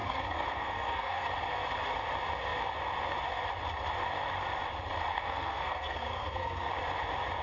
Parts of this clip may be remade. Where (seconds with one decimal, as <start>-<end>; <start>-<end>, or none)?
0.0-1.3; 5.1-6.7